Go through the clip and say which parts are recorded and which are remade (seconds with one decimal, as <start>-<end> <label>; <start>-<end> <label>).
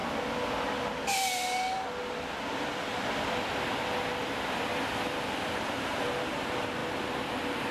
0.0-2.5 recorded; 2.5-7.7 remade